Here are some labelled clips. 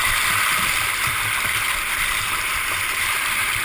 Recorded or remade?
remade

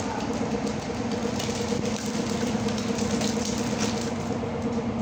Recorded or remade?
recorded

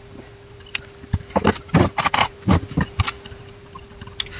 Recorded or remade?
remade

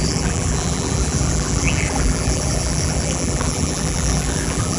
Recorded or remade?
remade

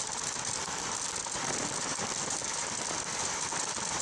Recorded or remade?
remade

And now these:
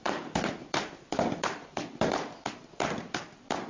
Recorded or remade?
remade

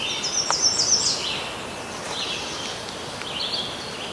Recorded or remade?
recorded